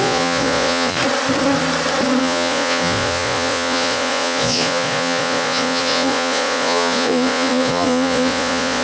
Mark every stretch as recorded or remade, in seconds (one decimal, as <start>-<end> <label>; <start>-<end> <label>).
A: 0.0-1.0 remade; 1.0-2.2 recorded; 2.2-8.8 remade